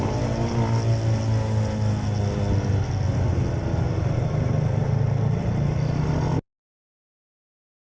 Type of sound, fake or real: real